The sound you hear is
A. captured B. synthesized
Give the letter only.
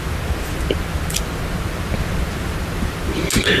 A